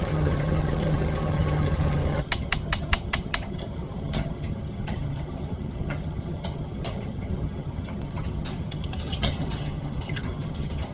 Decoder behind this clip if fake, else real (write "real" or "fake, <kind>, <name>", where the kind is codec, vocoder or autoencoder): fake, vocoder, HiFi-GAN